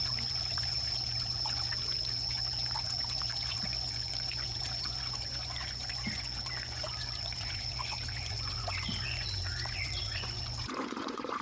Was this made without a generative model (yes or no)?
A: no